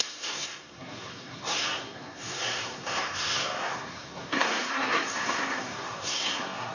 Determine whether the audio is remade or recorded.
remade